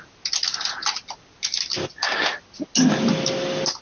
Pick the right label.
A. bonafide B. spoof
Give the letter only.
A